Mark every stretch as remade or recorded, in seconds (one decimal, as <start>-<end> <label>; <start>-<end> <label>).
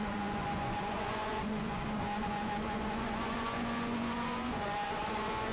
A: 0.0-5.5 remade